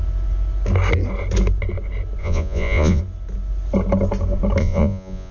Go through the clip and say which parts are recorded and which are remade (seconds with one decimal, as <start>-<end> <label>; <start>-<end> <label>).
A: 0.0-2.2 recorded; 2.2-3.0 remade; 3.0-4.6 recorded; 4.6-5.3 remade